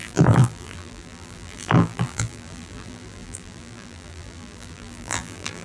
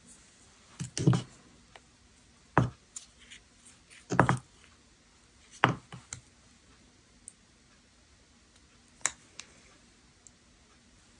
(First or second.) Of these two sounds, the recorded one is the second